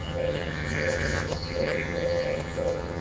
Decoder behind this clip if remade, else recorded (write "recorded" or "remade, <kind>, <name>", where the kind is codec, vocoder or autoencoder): remade, vocoder, HiFi-GAN